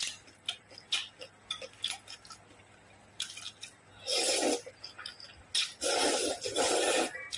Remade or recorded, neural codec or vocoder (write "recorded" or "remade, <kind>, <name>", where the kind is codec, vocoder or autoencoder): recorded